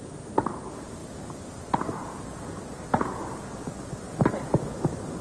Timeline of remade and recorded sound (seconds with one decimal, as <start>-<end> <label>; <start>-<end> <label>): 0.0-5.2 recorded